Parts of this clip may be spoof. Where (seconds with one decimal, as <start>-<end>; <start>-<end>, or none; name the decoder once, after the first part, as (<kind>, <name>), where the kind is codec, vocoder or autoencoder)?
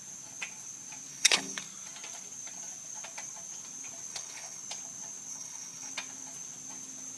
1.1-1.6 (codec, HILCodec); 4.1-4.6; 5.3-5.9